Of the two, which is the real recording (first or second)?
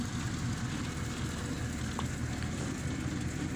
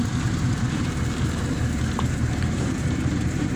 first